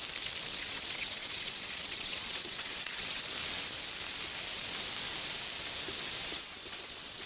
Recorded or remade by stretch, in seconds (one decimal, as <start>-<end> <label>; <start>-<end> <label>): 0.0-0.5 recorded; 0.5-3.3 remade; 3.3-6.2 recorded; 6.2-7.3 remade